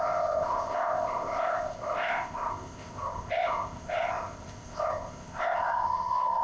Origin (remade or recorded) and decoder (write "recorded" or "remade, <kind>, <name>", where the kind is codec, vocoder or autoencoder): remade, codec, ZipCodec